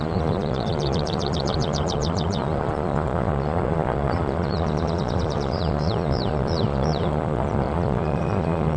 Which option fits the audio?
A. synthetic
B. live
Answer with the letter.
A